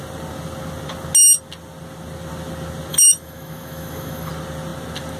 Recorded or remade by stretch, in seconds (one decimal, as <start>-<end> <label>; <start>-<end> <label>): 0.0-2.9 recorded; 2.9-4.3 remade; 4.3-5.2 recorded